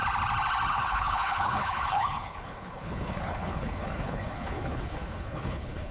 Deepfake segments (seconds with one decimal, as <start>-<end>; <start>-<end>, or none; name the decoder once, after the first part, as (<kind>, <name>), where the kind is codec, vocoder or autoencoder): 0.7-5.9 (codec, HILCodec)